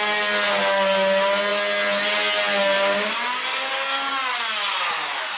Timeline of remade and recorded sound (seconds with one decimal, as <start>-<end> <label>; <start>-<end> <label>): 0.0-5.4 recorded